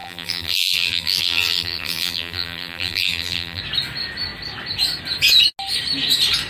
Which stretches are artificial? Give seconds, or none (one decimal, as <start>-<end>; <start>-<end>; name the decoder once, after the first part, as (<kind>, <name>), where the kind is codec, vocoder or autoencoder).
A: 0.0-3.6 (vocoder, BigVGAN v2)